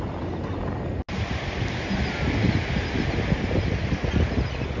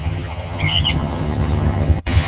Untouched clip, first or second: first